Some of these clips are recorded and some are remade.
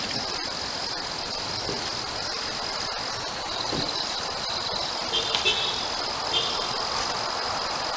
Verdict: recorded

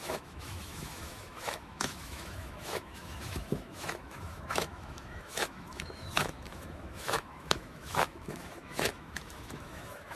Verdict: remade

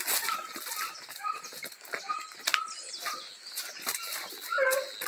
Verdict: recorded